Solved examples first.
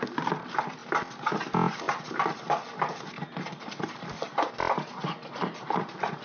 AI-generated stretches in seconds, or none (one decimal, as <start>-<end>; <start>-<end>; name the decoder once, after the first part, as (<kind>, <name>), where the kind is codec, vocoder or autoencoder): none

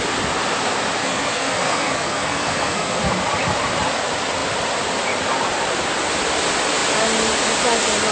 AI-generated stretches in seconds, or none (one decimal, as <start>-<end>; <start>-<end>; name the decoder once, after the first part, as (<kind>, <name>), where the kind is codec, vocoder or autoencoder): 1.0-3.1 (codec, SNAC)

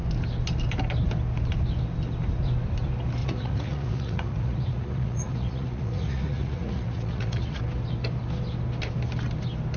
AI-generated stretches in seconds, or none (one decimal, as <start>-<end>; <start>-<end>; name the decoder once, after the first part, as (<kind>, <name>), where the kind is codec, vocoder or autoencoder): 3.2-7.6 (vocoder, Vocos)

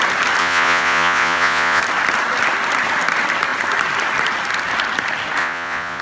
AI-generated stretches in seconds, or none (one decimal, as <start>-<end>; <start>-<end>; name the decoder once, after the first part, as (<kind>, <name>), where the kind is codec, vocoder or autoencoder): 0.4-1.8 (vocoder, Vocos); 5.4-6.0

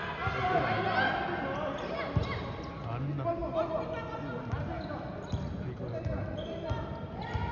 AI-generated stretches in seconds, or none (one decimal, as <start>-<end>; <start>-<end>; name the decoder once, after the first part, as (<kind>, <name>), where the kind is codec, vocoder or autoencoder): none